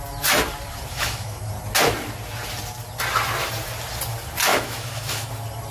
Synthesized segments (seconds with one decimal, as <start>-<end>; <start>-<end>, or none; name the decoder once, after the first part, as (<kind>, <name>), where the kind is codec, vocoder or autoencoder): 0.9-1.5 (autoencoder, DAC-VAE); 4.5-5.3